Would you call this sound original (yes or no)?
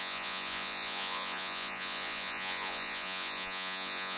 no